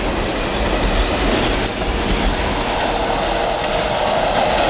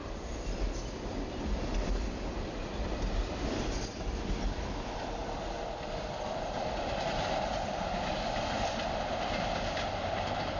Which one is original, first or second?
first